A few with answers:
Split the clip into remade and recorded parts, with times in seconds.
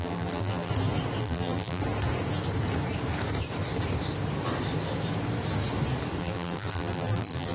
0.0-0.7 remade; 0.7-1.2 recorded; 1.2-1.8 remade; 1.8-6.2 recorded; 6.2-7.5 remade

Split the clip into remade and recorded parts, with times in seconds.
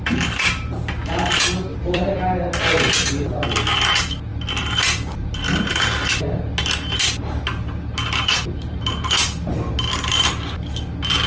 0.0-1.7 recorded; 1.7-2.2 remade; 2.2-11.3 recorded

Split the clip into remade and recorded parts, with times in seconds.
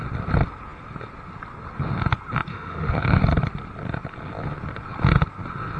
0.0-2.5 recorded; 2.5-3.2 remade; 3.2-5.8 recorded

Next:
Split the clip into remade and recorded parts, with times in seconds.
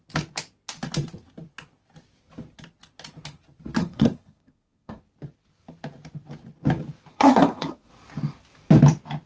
0.0-3.8 recorded; 3.8-5.0 remade; 5.0-7.1 recorded; 7.1-7.9 remade; 7.9-9.3 recorded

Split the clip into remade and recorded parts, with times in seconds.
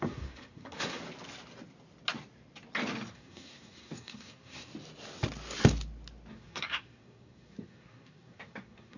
0.0-1.0 remade; 1.0-3.1 recorded; 3.1-4.7 remade; 4.7-6.3 recorded; 6.3-9.0 remade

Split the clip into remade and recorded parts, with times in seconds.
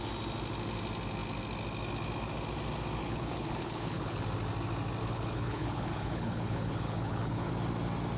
0.0-3.0 recorded; 3.0-4.2 remade; 4.2-5.0 recorded; 5.0-7.5 remade; 7.5-8.2 recorded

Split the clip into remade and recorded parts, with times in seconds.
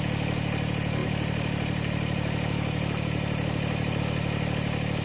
0.0-1.0 recorded; 1.0-4.0 remade; 4.0-5.0 recorded